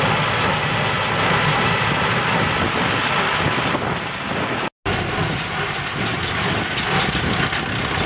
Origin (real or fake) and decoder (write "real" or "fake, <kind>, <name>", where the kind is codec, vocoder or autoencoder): real